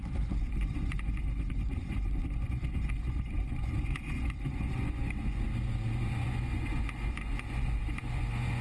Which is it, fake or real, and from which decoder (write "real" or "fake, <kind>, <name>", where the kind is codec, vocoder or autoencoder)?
fake, vocoder, Vocos